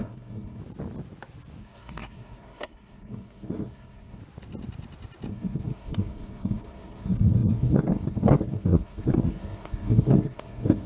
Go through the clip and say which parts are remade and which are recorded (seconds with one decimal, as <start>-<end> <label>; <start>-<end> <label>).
0.0-0.6 remade; 0.6-1.6 recorded; 1.6-4.2 remade; 4.2-5.3 recorded; 5.3-10.9 remade